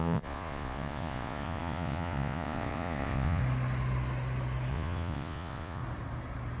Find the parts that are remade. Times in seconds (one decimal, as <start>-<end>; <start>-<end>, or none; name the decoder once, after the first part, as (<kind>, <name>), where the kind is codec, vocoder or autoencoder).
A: 0.0-3.4 (vocoder, Vocos); 4.7-5.8

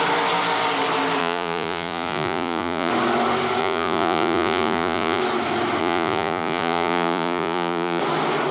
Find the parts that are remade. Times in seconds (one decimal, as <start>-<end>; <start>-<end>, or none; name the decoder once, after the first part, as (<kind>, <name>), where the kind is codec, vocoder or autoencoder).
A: 1.2-2.9 (vocoder, Vocos); 3.6-5.2; 5.8-8.0

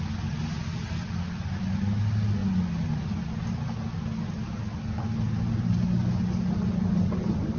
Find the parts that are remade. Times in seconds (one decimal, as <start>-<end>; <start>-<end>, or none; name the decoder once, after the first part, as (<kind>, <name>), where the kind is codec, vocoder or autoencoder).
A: none

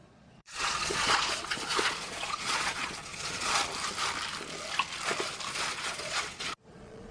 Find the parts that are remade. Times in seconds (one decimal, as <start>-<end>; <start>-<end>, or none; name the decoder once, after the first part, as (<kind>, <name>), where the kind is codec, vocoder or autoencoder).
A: 0.0-3.6 (vocoder, Vocos); 5.5-7.1

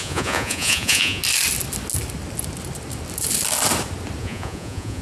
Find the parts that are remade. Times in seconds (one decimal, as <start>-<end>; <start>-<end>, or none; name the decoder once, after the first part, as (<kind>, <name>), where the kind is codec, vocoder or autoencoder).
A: 0.0-1.2 (vocoder, Vocos); 4.2-5.0